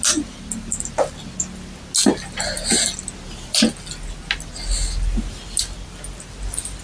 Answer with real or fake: real